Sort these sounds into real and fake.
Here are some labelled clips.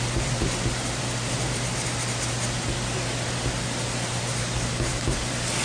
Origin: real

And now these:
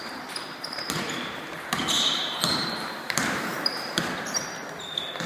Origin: fake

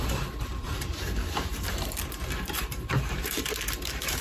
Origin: fake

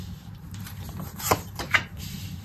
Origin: fake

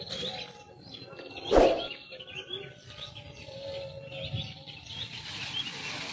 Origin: real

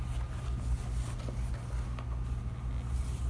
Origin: real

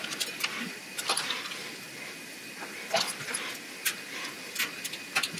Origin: real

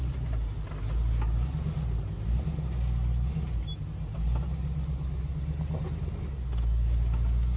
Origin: real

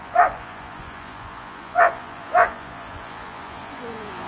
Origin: fake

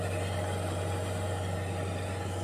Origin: real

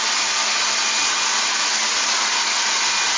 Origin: real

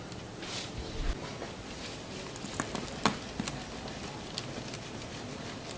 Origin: real